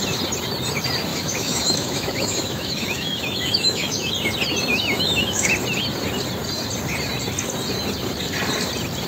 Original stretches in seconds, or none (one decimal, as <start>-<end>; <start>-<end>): 0.0-1.1; 4.1-4.7; 5.5-9.1

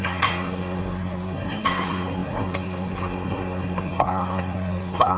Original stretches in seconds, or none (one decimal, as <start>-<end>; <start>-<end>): none

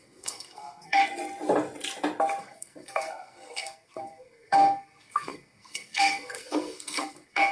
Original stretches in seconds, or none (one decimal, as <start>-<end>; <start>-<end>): 1.0-2.4

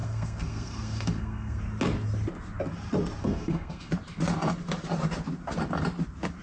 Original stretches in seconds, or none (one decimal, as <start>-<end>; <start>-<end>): 1.6-3.2; 3.9-6.4

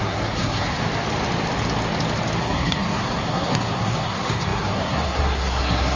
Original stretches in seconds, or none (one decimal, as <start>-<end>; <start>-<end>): 0.8-2.4

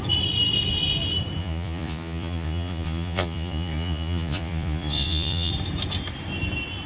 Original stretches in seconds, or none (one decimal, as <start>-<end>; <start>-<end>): 0.0-1.4; 5.5-6.9

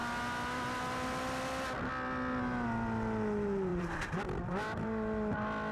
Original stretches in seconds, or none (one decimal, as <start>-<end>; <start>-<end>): 0.0-3.7; 4.5-5.7